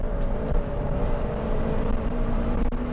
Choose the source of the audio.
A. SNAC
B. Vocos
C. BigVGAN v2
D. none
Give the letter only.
C